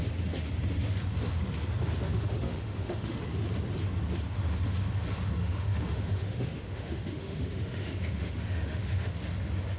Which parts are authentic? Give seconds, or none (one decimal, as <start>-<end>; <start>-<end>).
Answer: 0.0-2.1; 3.2-5.4; 9.1-9.8